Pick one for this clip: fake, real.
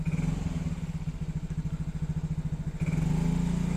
real